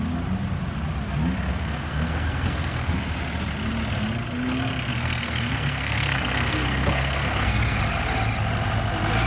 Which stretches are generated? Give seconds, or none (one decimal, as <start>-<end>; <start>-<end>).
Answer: 1.5-2.9; 4.9-7.8